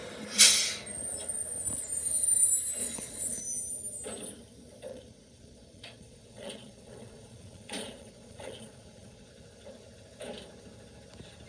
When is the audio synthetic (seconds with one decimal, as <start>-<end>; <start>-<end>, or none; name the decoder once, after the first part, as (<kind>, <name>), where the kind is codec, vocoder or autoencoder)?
2.8-3.4 (vocoder, Vocos); 4.9-9.3